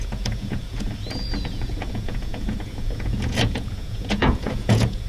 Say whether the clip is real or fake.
fake